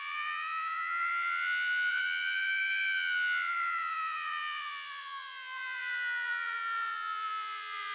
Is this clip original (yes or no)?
no